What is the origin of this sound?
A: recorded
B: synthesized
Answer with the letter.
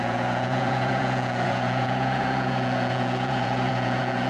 B